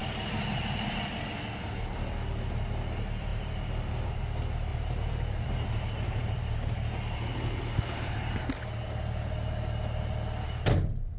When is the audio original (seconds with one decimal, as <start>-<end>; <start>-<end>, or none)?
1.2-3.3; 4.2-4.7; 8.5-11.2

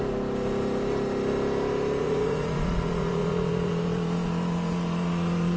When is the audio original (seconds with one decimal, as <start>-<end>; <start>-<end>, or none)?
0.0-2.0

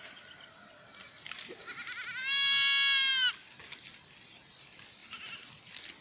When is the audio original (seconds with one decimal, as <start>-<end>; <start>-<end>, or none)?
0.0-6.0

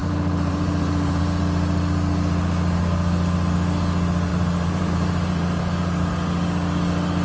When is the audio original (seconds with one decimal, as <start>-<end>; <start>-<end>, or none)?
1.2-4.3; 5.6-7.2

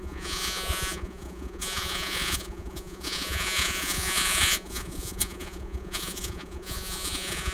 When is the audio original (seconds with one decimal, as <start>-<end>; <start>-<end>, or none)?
none

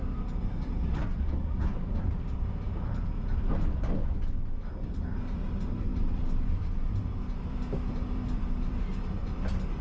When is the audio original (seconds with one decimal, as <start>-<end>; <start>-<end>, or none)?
0.0-5.9; 8.7-9.8